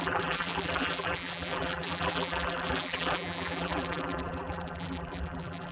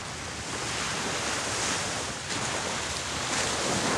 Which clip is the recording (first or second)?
second